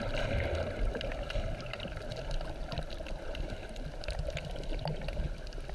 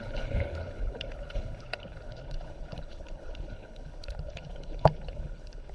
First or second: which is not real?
second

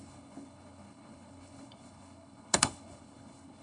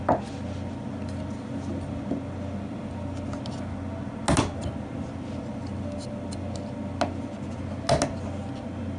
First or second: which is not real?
first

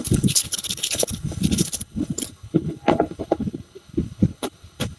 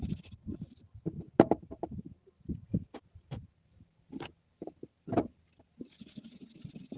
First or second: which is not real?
first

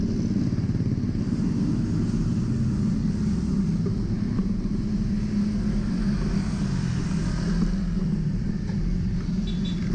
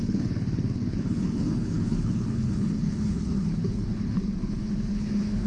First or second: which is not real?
second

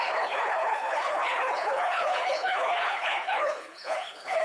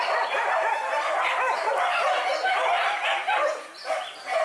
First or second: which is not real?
first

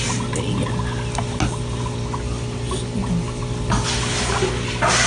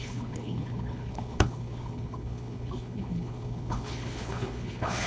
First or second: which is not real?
second